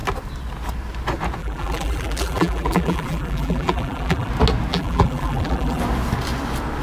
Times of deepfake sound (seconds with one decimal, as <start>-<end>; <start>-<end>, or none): 1.4-4.3; 4.7-5.8